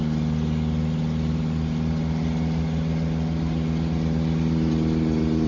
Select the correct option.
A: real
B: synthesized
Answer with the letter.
A